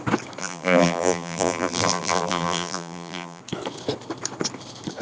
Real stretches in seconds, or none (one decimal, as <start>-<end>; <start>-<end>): 0.0-0.4; 3.4-5.0